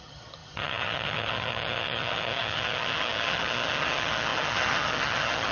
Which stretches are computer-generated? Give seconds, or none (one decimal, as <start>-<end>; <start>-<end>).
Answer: 0.0-5.5